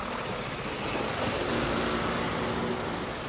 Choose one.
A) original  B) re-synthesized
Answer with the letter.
A